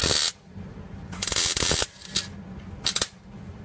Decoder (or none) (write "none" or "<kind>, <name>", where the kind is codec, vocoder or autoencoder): none